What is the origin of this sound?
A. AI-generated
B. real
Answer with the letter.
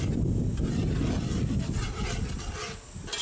B